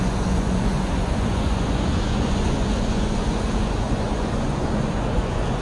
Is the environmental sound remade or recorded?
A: remade